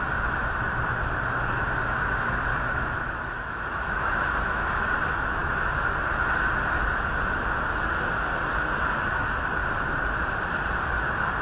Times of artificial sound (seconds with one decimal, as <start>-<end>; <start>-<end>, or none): 2.5-5.0